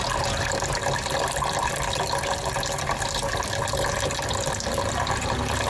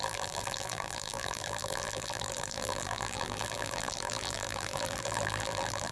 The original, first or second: first